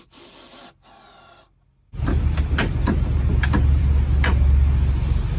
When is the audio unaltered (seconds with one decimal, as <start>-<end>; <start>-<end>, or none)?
0.0-5.4